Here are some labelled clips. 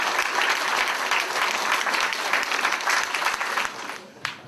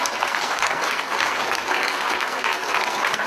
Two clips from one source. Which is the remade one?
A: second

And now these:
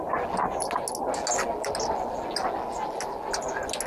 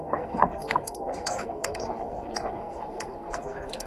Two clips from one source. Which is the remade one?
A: second